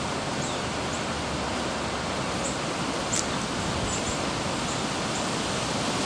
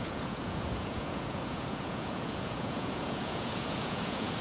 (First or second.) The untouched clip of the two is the first